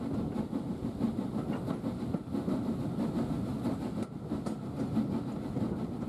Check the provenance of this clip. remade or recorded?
recorded